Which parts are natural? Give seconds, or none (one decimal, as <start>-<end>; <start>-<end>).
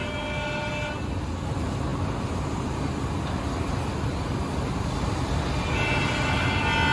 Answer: 0.0-6.9